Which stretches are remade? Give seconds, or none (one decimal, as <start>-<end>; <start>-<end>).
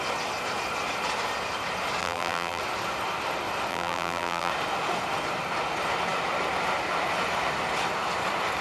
2.0-2.6; 3.7-4.5